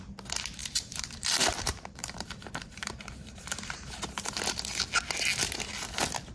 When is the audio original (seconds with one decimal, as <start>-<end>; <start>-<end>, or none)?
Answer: 0.0-0.6; 4.4-6.3